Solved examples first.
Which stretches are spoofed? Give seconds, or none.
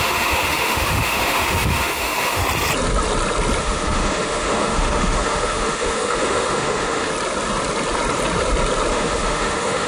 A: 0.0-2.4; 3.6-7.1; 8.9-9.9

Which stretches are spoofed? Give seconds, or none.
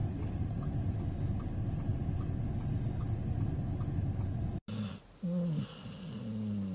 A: 0.0-1.0